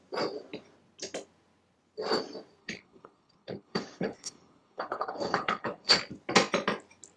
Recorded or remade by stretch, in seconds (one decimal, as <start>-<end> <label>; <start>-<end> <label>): 0.0-2.6 recorded; 2.6-6.0 remade; 6.0-7.2 recorded